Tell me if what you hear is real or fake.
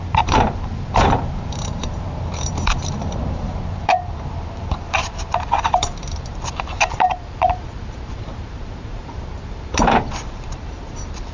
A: fake